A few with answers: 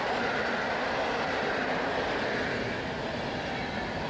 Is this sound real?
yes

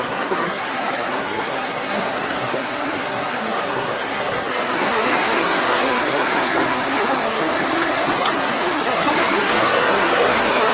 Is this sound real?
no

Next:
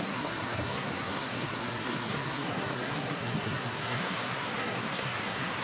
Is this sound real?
no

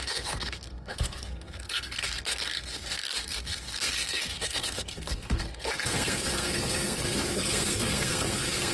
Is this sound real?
no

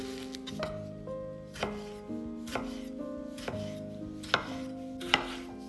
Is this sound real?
yes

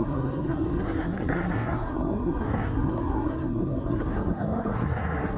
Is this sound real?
no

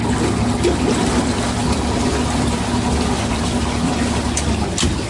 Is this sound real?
yes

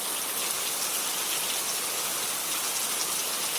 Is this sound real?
yes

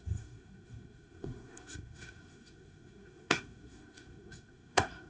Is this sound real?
no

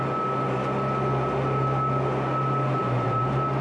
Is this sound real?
yes